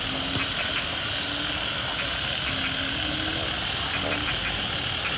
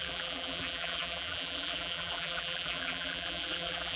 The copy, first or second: second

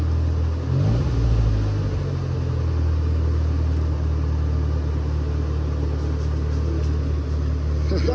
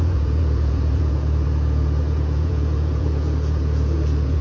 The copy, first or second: second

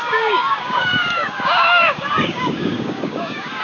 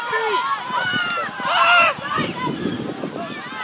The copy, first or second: first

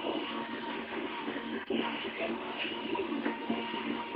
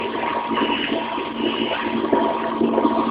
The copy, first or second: first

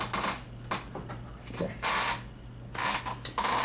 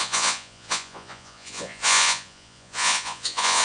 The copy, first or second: second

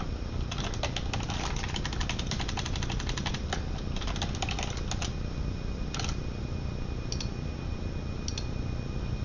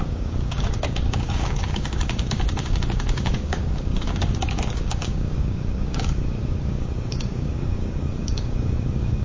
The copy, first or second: second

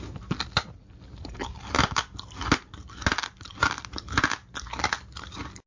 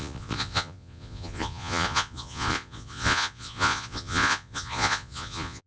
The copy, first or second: second